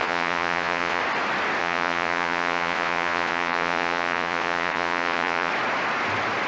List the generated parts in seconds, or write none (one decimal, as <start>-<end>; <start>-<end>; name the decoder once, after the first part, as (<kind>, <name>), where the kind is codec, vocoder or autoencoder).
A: 0.0-1.0 (vocoder, Vocos); 1.6-5.5